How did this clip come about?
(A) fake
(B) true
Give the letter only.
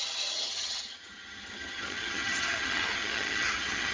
A